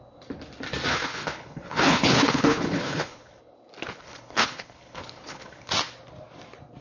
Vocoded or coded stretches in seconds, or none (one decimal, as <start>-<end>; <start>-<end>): 0.9-3.4; 3.9-5.7